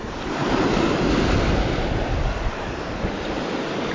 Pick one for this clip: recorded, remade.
recorded